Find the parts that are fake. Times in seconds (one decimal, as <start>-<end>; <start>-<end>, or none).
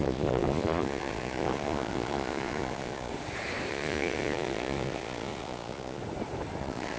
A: 0.0-3.1; 3.7-6.0; 6.6-7.0